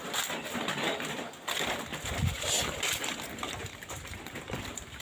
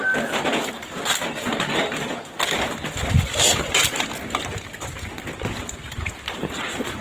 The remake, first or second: first